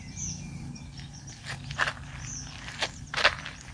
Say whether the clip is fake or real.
real